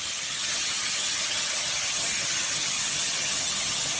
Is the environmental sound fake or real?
fake